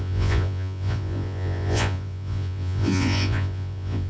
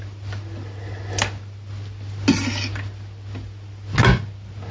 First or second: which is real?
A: second